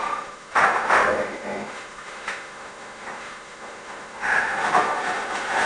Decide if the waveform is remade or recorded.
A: remade